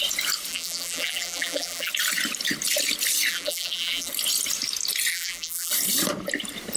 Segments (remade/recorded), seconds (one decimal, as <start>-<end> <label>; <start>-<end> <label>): 0.0-0.5 recorded; 0.5-1.9 remade; 1.9-3.3 recorded; 3.3-4.1 remade; 4.1-5.1 recorded; 5.1-5.7 remade; 5.7-6.8 recorded